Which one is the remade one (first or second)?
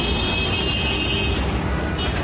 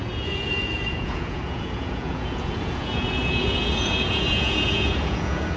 second